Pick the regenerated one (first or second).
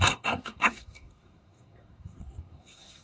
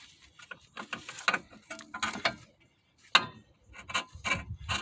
first